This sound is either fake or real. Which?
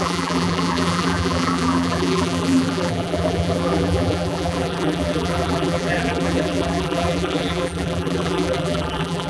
fake